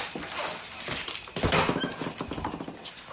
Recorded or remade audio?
recorded